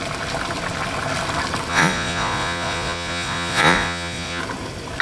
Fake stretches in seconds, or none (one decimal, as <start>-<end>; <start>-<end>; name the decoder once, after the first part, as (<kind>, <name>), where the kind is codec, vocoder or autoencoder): 1.7-4.4 (vocoder, Vocos)